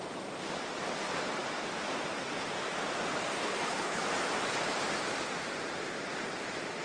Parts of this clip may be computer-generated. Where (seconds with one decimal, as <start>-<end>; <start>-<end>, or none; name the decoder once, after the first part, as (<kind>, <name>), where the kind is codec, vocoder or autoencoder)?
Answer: 3.3-4.0 (codec, HILCodec)